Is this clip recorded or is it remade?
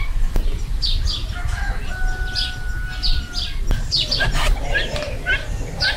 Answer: recorded